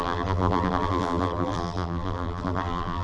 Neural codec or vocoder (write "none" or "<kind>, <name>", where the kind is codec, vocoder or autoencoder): vocoder, BigVGAN v2